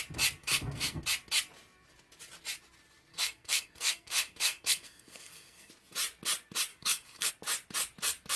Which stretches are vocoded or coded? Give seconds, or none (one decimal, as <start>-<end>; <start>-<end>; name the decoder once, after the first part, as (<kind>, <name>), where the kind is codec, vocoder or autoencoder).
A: 0.4-1.0 (codec, SNAC); 3.1-5.7; 6.7-7.3

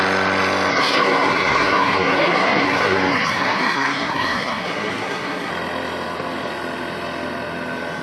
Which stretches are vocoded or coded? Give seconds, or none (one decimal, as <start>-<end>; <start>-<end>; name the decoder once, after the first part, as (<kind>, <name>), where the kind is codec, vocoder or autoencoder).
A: 0.7-5.5 (codec, SNAC)

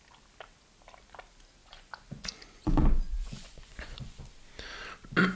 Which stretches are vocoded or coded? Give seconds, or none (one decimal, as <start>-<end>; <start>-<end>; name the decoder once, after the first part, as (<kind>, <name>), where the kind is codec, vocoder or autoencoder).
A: 1.6-4.2 (vocoder, Vocos)

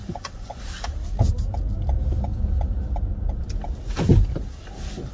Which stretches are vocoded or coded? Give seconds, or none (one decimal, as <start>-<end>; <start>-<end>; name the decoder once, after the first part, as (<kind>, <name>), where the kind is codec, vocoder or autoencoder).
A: 0.0-0.6 (vocoder, Vocos)

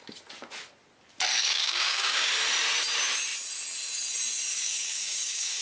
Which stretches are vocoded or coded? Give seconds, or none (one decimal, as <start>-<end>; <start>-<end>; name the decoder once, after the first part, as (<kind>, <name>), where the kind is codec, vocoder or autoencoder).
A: 1.3-2.3 (codec, DAC); 4.5-5.6

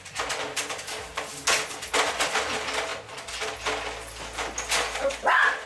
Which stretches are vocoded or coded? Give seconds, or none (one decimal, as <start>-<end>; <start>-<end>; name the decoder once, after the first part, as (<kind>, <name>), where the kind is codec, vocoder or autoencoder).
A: none